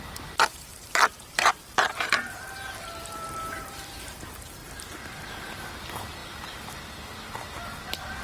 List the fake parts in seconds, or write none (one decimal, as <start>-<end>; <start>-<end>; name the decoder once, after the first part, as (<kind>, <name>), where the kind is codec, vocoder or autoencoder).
0.7-3.9 (vocoder, BigVGAN v2); 4.6-5.6; 6.2-6.8